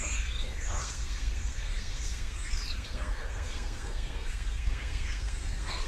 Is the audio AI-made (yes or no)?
yes